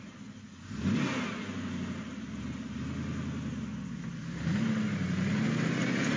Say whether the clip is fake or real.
real